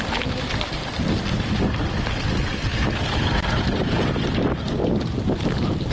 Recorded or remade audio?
remade